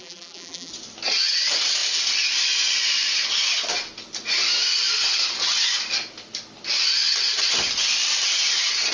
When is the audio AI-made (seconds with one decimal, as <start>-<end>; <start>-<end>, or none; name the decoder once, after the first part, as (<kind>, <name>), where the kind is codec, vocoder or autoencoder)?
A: 0.0-0.7 (vocoder, BigVGAN v2)